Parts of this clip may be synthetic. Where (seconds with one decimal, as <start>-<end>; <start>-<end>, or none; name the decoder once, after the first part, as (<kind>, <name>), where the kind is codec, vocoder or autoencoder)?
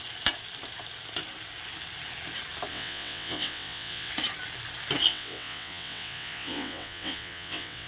2.7-4.1 (vocoder, WaveNeXt); 5.1-7.9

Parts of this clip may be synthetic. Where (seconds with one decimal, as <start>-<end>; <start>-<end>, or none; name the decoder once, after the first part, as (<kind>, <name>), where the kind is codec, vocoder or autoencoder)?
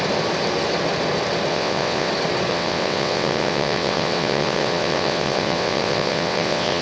1.5-2.1 (vocoder, WaveNeXt); 2.5-6.8